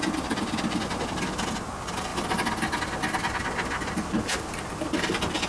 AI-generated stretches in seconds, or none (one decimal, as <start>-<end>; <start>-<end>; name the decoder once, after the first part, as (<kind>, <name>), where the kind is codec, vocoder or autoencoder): none